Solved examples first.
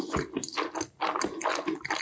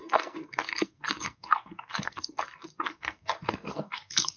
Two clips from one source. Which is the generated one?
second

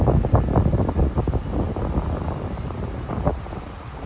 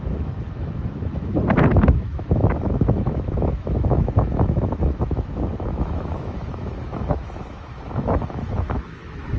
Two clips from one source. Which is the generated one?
second